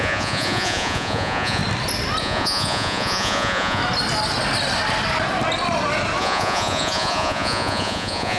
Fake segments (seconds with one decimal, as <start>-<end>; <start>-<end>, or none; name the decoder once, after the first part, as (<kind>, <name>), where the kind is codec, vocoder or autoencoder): 0.0-1.6 (vocoder, Vocos); 2.2-3.8; 6.2-8.4